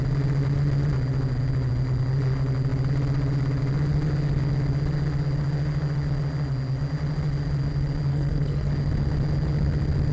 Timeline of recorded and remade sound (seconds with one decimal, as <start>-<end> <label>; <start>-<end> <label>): 0.0-8.1 recorded; 8.1-8.7 remade; 8.7-10.1 recorded